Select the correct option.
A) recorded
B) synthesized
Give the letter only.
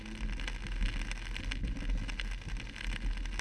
A